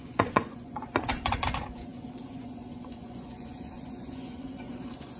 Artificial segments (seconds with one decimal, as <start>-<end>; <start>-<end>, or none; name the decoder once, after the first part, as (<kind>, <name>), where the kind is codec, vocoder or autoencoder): 0.0-5.2 (vocoder, Vocos)